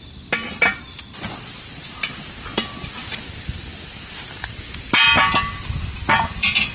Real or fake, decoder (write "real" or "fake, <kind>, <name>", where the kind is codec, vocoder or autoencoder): real